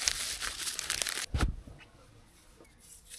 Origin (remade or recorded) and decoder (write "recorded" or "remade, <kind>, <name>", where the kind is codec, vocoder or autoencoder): recorded